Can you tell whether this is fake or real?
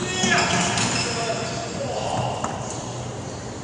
real